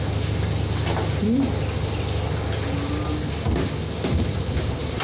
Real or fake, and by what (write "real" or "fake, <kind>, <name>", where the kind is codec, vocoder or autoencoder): real